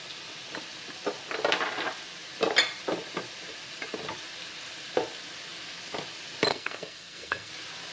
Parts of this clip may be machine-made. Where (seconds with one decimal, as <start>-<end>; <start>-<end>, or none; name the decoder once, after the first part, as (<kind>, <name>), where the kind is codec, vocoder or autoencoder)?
6.5-7.5 (codec, SNAC)